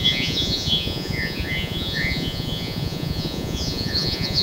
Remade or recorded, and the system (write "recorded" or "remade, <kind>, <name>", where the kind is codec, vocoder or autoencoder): remade, vocoder, Vocos